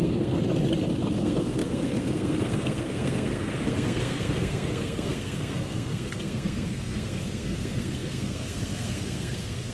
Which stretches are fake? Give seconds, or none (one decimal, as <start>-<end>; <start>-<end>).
0.0-0.4; 1.2-9.7